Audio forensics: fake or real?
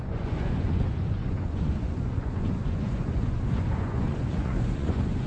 fake